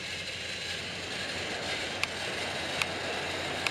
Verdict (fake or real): real